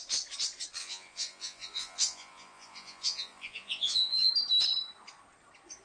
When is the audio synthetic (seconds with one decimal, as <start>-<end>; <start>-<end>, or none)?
0.8-4.3